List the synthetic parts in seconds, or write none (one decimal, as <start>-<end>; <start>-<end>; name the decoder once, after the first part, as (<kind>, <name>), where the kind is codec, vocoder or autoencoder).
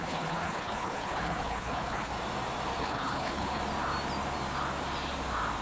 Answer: 0.0-2.1 (codec, HILCodec); 2.8-3.6